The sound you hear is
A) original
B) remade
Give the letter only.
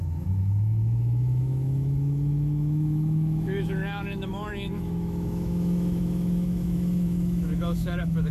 B